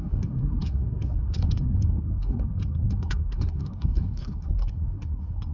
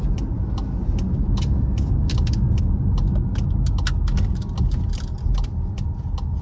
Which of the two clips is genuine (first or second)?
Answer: second